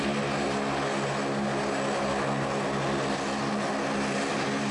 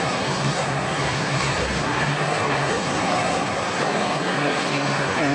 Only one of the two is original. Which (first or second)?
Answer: first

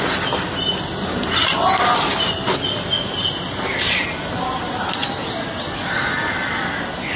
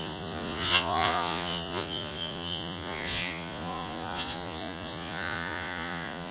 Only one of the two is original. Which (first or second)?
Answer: first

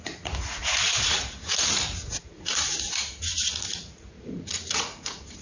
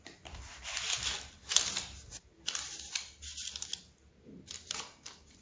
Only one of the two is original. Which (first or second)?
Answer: second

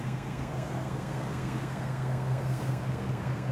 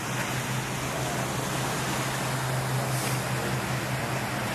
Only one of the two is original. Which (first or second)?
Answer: second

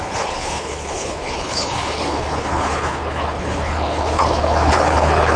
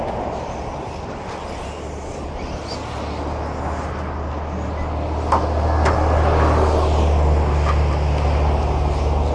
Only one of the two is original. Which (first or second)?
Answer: second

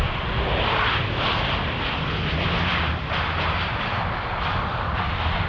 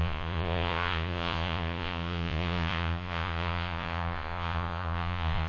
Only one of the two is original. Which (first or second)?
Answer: first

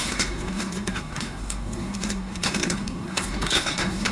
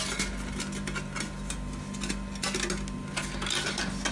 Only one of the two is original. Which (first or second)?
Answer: second